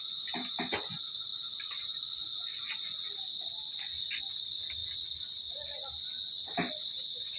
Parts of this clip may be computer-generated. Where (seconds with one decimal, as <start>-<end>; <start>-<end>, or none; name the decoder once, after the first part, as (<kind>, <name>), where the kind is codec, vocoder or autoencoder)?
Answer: 6.4-7.4 (vocoder, BigVGAN v2)